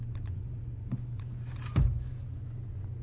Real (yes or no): no